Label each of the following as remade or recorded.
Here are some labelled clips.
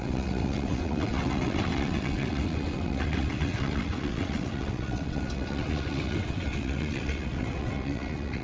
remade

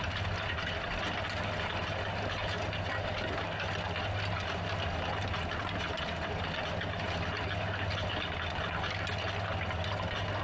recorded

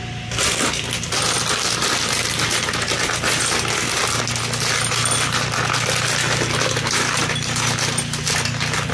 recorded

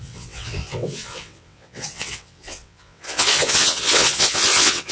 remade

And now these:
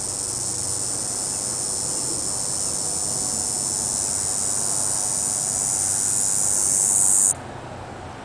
recorded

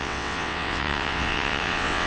remade